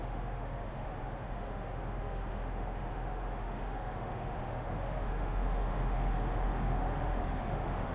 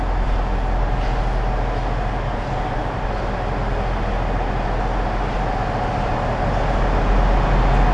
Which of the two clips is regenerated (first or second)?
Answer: first